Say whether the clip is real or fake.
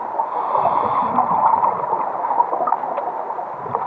fake